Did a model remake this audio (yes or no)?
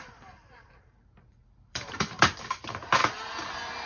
yes